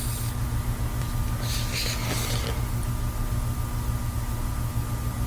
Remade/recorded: recorded